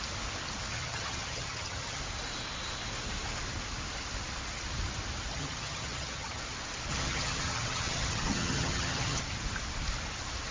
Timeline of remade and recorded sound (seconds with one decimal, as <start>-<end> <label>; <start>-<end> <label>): 0.0-0.7 recorded; 0.7-2.0 remade; 2.0-5.3 recorded; 5.3-6.4 remade; 6.4-6.9 recorded; 6.9-9.2 remade; 9.2-10.5 recorded